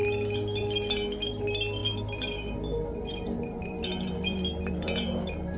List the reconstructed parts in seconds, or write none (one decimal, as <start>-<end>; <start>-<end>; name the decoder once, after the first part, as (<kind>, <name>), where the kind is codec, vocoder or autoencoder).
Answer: 1.8-5.6 (vocoder, BigVGAN v2)